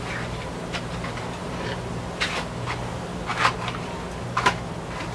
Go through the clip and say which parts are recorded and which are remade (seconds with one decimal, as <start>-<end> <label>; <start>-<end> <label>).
0.0-1.4 recorded; 1.4-2.9 remade; 2.9-3.3 recorded; 3.3-3.9 remade; 3.9-5.1 recorded